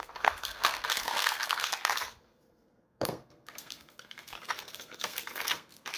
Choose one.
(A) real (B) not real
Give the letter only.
B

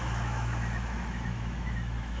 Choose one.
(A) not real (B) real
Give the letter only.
A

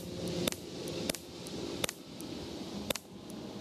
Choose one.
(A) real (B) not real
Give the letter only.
A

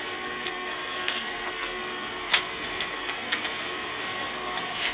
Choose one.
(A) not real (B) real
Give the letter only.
A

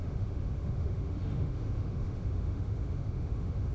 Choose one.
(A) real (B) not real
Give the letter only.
B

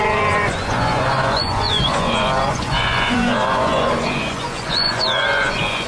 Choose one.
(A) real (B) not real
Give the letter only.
B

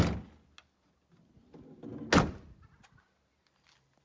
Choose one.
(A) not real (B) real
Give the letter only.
B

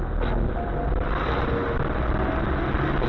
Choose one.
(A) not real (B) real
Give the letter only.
B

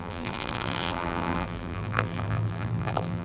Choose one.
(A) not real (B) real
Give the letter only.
A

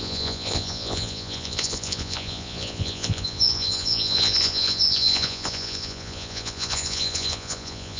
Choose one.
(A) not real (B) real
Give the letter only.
A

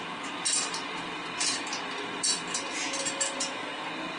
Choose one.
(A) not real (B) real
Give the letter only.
B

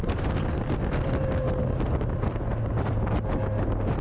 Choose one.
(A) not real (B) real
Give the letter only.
B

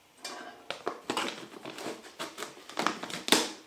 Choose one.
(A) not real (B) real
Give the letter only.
B